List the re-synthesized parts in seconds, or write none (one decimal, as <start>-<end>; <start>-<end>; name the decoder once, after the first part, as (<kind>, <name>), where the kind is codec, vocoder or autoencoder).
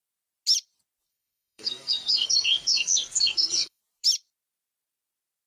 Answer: 1.1-3.8 (codec, SNAC)